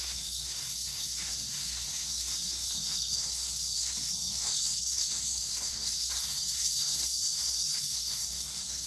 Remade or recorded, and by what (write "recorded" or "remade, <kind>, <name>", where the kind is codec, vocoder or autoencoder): remade, codec, SNAC